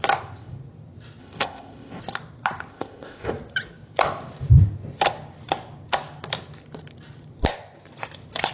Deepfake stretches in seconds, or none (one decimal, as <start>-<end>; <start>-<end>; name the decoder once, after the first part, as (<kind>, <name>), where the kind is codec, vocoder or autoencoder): 1.2-2.0 (codec, ZipCodec); 2.7-3.3